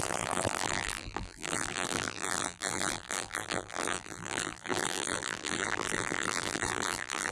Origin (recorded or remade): remade